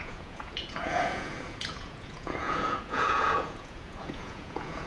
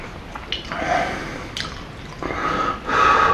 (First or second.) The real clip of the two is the second